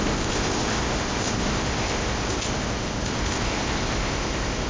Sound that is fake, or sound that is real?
fake